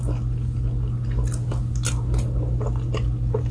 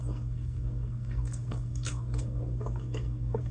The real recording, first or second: first